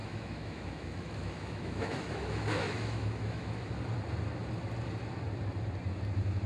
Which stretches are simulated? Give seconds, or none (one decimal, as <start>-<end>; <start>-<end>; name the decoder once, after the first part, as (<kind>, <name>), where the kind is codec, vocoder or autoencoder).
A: 0.0-3.7 (autoencoder, DAC-VAE)